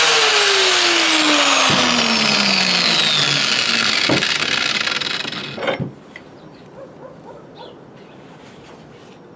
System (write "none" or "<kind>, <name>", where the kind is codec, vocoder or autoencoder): none